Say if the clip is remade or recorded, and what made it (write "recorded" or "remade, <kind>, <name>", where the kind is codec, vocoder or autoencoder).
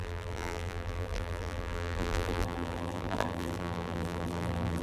remade, vocoder, BigVGAN v2